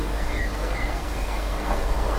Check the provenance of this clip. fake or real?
fake